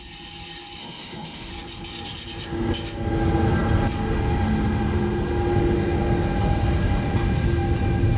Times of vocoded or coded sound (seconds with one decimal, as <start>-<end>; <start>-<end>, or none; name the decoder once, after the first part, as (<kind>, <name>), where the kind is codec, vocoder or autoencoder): 0.8-1.5 (autoencoder, DAC-VAE)